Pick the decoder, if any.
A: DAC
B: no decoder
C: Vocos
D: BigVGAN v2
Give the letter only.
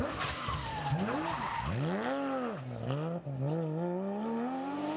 B